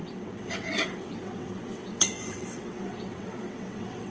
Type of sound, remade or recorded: remade